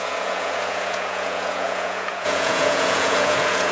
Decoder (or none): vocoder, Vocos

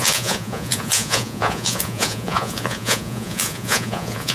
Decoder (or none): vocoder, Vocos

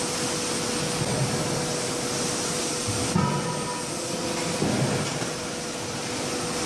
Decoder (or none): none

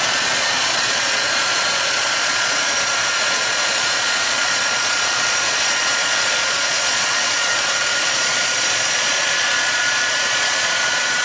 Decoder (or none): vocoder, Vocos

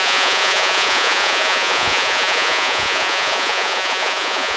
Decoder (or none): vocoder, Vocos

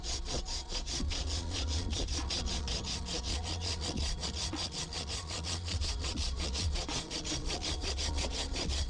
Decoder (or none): vocoder, Vocos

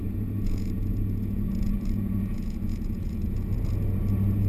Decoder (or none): vocoder, Vocos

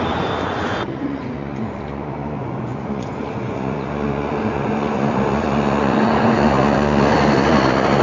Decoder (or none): vocoder, Vocos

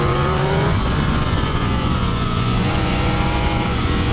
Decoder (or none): vocoder, Vocos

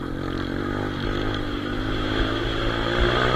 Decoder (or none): none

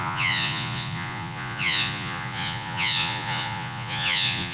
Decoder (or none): vocoder, Vocos